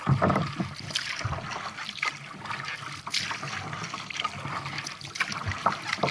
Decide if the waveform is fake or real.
real